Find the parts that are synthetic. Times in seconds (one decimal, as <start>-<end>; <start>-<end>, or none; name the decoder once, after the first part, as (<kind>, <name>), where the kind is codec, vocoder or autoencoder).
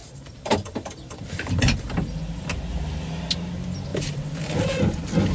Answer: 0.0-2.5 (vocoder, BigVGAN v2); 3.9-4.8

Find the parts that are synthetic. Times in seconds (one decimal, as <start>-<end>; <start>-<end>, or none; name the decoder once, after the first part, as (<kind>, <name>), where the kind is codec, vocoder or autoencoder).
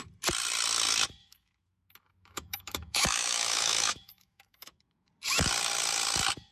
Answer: 1.2-5.1 (autoencoder, DAC-VAE)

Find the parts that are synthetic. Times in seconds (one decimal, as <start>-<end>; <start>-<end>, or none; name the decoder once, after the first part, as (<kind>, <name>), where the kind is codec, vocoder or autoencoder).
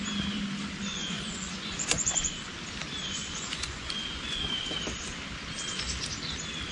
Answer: 0.9-2.4 (vocoder, Vocos); 3.2-4.6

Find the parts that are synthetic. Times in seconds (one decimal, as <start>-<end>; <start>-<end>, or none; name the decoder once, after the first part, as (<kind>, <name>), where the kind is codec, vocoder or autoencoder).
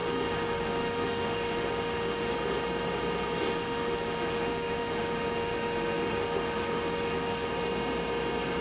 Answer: 0.0-2.3 (autoencoder, DAC-VAE); 3.4-7.5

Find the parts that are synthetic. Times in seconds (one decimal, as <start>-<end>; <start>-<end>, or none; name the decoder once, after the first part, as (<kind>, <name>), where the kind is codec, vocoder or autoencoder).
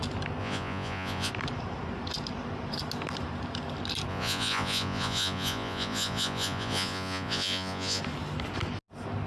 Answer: 0.4-1.3 (vocoder, Vocos); 4.1-8.0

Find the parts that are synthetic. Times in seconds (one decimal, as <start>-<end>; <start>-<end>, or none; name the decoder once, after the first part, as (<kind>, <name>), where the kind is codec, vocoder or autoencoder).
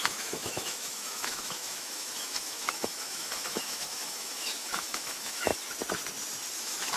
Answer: 0.0-5.5 (autoencoder, DAC-VAE); 6.6-7.0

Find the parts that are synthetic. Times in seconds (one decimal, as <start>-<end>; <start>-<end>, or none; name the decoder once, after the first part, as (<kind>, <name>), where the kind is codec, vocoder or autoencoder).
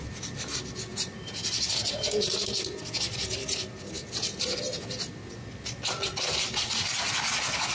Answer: none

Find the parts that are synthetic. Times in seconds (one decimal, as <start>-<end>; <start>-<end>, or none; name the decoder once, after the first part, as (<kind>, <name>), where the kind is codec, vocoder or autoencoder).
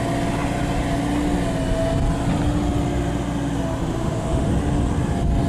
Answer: 3.8-4.5 (autoencoder, DAC-VAE)